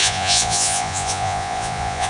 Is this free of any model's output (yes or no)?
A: no